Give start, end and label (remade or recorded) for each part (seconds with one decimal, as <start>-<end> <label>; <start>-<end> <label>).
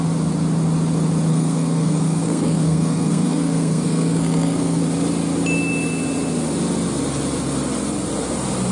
0.0-1.3 recorded; 1.3-4.8 remade; 4.8-8.7 recorded